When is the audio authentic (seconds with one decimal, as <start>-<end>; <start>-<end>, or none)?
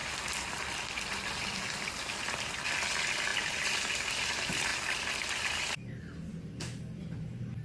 0.0-7.6